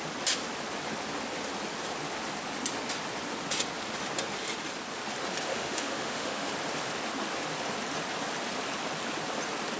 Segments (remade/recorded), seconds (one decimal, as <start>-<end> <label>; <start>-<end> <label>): 0.0-5.5 recorded; 5.5-6.5 remade; 6.5-9.8 recorded